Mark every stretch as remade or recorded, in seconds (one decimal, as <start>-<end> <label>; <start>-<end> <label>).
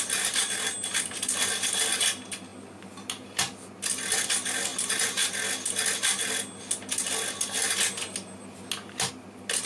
0.0-9.7 recorded